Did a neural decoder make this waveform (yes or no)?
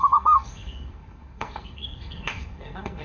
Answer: yes